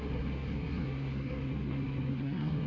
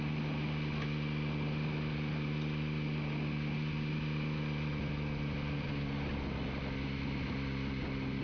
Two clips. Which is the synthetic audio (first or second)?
first